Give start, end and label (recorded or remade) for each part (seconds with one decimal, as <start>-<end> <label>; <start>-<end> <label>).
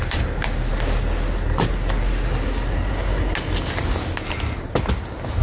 0.0-5.4 recorded